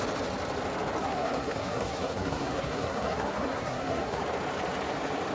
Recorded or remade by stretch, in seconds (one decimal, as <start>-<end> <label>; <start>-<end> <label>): 0.0-1.0 recorded; 1.0-4.2 remade; 4.2-5.3 recorded